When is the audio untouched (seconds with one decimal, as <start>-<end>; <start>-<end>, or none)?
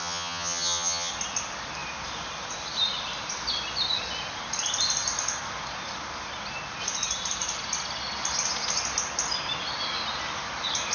1.1-10.9